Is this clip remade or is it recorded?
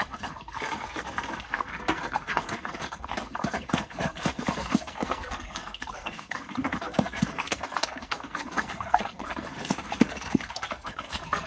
remade